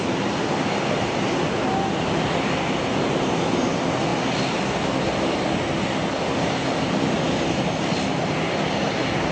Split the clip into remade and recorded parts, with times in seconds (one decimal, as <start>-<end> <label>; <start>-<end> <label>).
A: 0.0-9.3 recorded